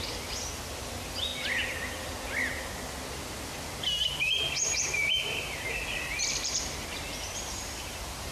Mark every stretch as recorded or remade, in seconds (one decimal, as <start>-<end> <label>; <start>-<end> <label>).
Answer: 0.0-1.3 remade; 1.3-3.5 recorded; 3.5-8.3 remade